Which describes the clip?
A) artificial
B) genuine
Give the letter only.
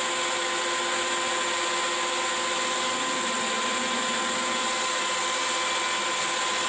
B